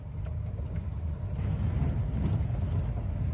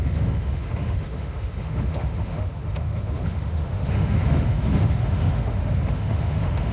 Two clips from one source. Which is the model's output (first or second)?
second